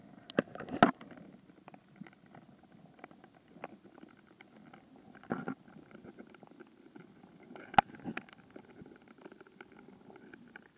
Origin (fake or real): real